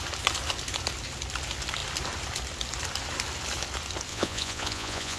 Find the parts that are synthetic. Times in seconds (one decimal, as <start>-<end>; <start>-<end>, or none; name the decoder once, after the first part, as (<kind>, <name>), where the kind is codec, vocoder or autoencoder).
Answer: 4.1-5.2 (vocoder, Vocos)